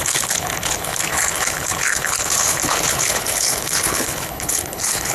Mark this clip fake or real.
fake